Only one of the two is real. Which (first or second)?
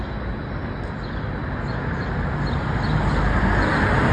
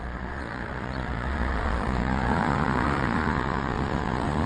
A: first